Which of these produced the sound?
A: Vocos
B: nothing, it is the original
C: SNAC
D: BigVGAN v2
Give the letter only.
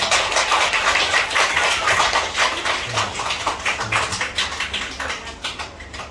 B